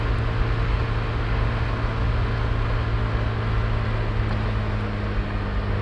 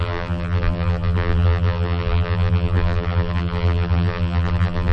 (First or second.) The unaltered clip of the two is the first